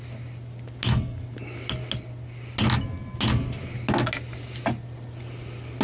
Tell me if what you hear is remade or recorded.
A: recorded